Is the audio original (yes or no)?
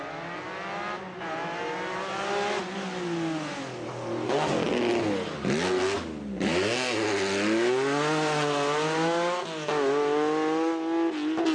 yes